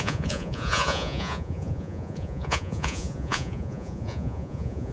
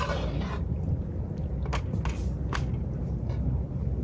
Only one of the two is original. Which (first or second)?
second